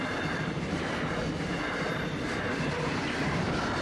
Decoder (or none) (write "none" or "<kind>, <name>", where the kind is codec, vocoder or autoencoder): none